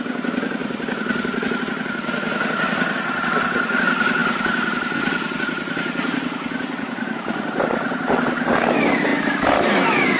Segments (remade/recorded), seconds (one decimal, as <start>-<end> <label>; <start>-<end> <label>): 0.0-10.2 recorded